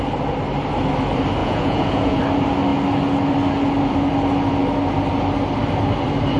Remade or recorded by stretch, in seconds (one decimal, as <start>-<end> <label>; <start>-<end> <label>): 0.0-1.4 recorded; 1.4-2.2 remade; 2.2-6.4 recorded